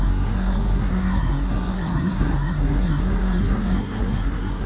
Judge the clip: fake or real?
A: fake